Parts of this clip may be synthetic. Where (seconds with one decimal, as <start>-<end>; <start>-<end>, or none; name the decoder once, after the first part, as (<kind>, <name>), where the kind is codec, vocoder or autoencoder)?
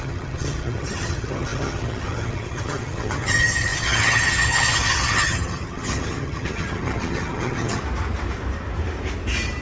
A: 0.0-7.8 (vocoder, HiFi-GAN)